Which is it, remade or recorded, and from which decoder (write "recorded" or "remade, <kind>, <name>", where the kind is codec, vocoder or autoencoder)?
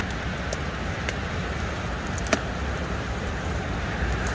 recorded